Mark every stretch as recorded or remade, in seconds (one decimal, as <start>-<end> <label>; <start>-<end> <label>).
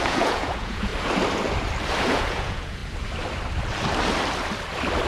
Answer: 0.0-0.9 remade; 0.9-2.0 recorded; 2.0-2.8 remade; 2.8-5.1 recorded